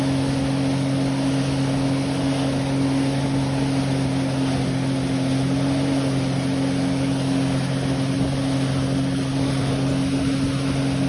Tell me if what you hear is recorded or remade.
recorded